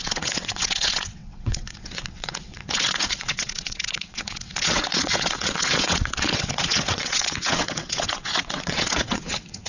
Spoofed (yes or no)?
yes